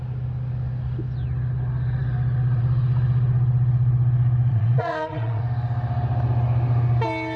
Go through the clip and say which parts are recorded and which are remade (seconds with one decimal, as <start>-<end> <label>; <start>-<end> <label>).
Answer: 0.0-4.5 recorded; 4.5-5.4 remade; 5.4-7.4 recorded